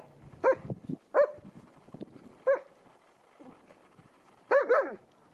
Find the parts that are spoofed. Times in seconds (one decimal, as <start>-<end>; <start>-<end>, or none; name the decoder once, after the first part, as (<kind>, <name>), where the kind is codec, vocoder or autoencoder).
3.8-4.7 (vocoder, BigVGAN v2)